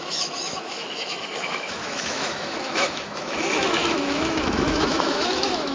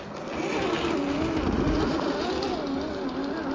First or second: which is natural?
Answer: second